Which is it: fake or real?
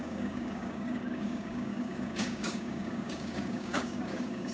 fake